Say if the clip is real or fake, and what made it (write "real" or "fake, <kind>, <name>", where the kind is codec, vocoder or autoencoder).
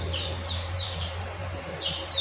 fake, vocoder, BigVGAN v2